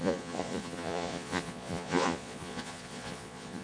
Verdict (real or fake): fake